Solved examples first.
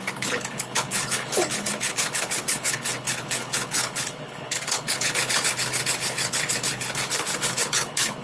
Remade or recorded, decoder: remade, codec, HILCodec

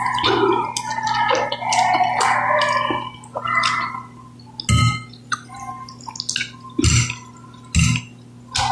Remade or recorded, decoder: recorded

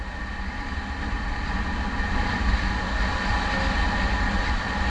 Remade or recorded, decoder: recorded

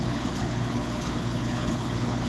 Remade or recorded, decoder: remade, codec, HILCodec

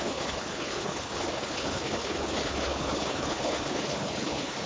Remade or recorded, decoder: remade, codec, HILCodec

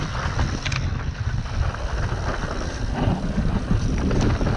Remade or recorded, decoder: recorded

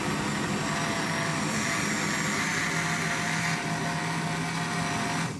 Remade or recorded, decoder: recorded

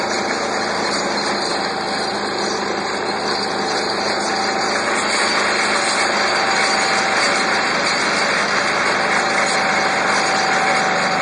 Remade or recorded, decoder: recorded